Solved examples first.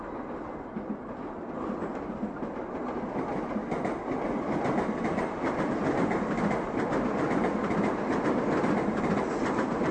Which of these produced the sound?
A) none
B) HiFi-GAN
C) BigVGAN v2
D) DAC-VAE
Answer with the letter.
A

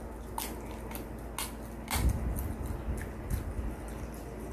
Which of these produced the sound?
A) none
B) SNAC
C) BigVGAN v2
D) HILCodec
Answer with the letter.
A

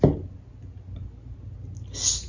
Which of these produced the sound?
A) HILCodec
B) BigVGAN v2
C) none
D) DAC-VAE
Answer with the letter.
C